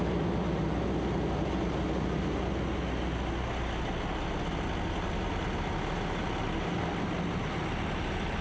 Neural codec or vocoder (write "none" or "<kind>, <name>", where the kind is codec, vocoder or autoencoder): none